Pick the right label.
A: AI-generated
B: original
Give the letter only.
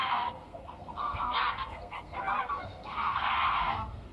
A